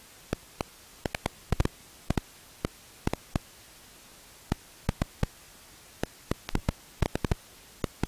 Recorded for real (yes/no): yes